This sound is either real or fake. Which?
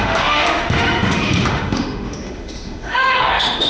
fake